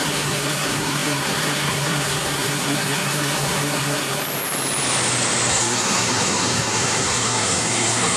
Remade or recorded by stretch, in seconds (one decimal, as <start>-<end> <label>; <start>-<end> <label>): 0.0-4.2 remade; 4.2-5.5 recorded; 5.5-8.2 remade